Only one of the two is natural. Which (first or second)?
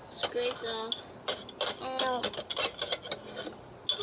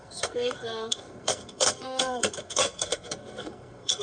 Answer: first